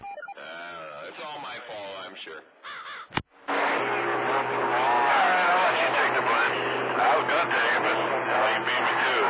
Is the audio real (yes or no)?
yes